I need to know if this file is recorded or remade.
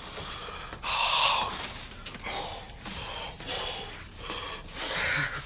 recorded